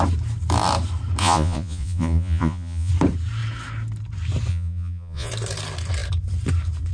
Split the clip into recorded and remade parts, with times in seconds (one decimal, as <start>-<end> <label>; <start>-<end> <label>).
0.0-1.2 recorded; 1.2-2.9 remade; 2.9-4.5 recorded; 4.5-5.3 remade; 5.3-6.9 recorded